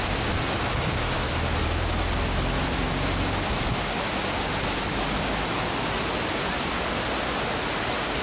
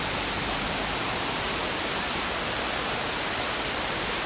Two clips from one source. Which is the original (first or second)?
first